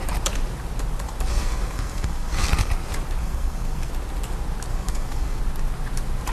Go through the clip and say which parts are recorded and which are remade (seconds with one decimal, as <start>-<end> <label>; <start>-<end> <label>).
0.0-1.3 recorded; 1.3-2.7 remade; 2.7-3.2 recorded; 3.2-3.9 remade; 3.9-4.7 recorded; 4.7-5.4 remade; 5.4-6.3 recorded